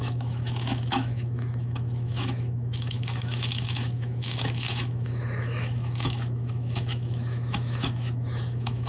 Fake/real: fake